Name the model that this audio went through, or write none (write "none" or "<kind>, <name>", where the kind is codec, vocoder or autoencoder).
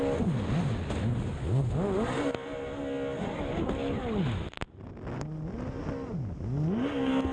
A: none